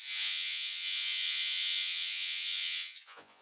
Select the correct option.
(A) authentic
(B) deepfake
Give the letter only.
B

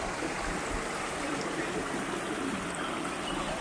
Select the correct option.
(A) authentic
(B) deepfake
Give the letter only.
A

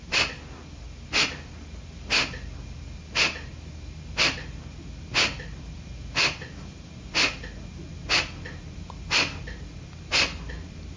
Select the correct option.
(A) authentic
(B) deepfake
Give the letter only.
A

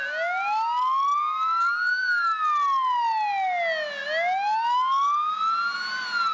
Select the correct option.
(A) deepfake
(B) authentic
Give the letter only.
B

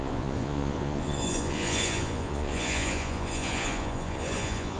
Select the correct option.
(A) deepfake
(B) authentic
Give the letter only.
A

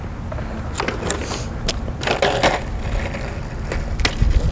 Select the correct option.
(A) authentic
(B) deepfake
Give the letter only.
A